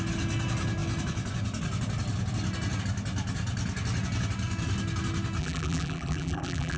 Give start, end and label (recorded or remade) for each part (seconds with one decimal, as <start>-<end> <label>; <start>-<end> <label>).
0.0-5.4 recorded; 5.4-6.8 remade